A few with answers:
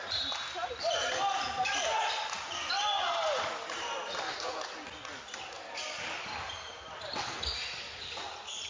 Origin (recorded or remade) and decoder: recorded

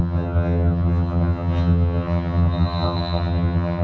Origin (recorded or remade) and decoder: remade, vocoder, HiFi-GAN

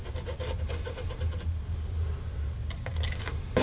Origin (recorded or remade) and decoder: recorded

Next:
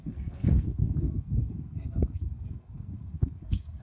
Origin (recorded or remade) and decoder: remade, codec, SNAC